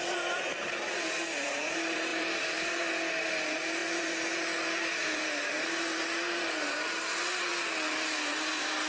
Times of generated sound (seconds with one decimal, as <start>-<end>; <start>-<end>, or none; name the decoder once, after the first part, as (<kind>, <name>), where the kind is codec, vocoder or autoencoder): 0.0-7.5 (vocoder, BigVGAN v2); 8.3-8.9